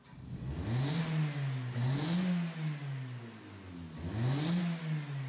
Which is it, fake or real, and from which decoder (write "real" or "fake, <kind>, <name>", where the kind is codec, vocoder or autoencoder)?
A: real